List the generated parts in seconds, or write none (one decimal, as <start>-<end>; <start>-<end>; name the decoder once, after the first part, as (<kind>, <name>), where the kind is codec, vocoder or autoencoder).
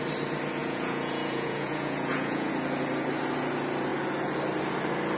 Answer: 0.6-2.5 (vocoder, Vocos)